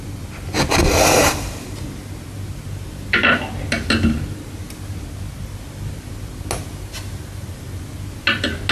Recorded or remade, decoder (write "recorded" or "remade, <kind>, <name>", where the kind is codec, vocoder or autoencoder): recorded